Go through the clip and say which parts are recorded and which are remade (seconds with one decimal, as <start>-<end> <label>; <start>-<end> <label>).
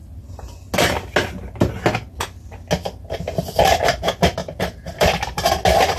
0.0-4.4 recorded; 4.4-5.1 remade; 5.1-6.0 recorded